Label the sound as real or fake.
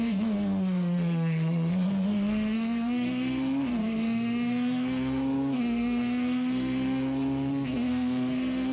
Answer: fake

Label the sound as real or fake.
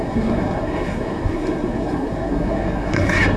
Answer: fake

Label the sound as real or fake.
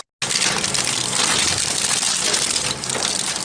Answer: real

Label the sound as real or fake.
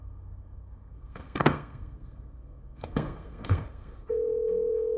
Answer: fake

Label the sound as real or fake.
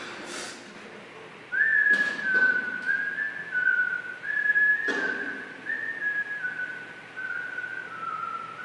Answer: real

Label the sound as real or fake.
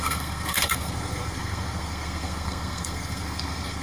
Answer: fake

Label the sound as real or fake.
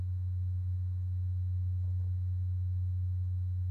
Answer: real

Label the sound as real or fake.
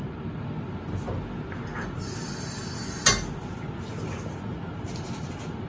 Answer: real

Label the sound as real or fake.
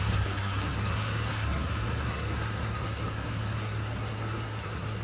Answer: fake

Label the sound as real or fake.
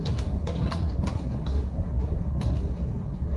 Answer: fake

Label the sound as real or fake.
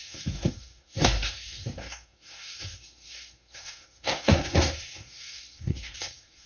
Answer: fake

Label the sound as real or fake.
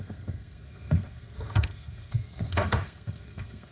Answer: fake